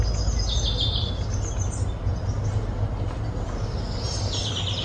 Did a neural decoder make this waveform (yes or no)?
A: no